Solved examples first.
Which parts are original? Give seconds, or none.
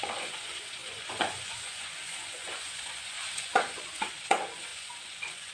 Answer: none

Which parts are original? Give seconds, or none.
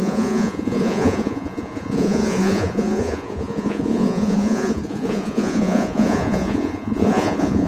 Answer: none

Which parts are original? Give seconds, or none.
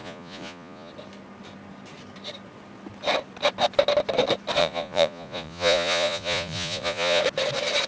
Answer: 0.9-4.6; 7.2-7.9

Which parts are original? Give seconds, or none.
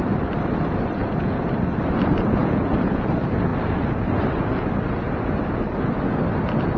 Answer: 0.0-1.0; 1.5-2.4; 3.1-6.8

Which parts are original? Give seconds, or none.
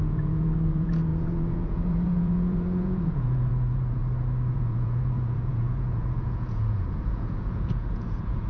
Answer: 4.0-4.5